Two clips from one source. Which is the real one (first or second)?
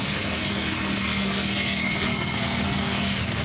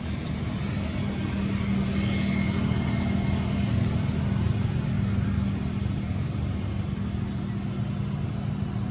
second